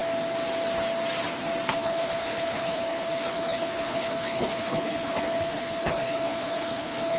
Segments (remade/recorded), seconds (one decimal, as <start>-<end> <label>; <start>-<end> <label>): 0.0-1.7 recorded; 1.7-7.2 remade